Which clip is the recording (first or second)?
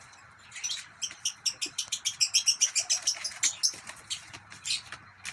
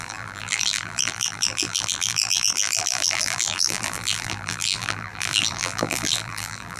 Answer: first